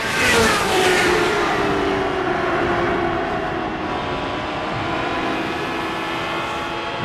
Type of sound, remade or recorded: remade